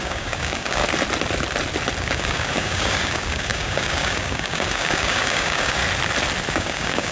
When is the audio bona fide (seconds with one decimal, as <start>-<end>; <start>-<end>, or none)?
0.8-2.0; 5.8-6.5